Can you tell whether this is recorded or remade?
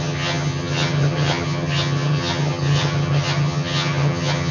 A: remade